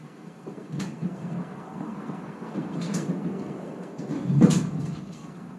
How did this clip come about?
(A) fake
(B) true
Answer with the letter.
A